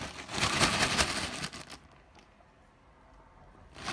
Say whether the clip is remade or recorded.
recorded